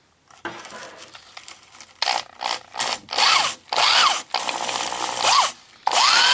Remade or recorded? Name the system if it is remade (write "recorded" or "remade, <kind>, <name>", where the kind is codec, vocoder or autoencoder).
recorded